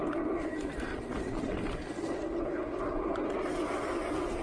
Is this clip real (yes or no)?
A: yes